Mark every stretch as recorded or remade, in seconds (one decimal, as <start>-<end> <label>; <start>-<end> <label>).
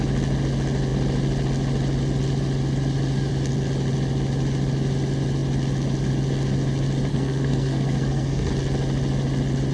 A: 0.0-7.1 recorded; 7.1-8.5 remade; 8.5-9.7 recorded